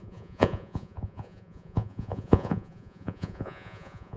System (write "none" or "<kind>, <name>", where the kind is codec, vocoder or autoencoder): vocoder, Vocos